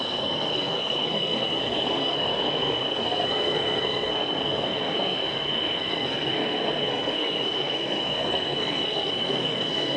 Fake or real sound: fake